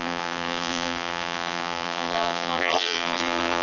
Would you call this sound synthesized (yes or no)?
yes